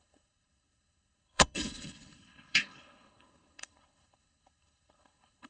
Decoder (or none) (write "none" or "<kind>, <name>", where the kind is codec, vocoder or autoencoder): codec, HILCodec